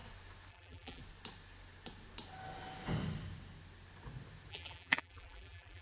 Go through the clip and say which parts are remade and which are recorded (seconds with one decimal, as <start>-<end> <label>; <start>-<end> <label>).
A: 0.0-0.5 recorded; 0.5-1.0 remade; 1.0-4.5 recorded; 4.5-5.8 remade